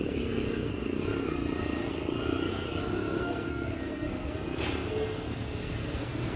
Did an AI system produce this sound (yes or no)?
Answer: yes